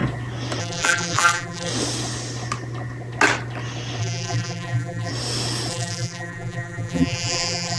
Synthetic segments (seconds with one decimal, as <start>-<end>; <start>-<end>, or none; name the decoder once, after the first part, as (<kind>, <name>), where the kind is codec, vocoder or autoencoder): 0.6-1.7 (vocoder, BigVGAN v2); 4.0-5.1; 5.7-7.8